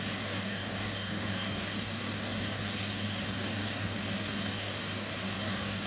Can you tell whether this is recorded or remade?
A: remade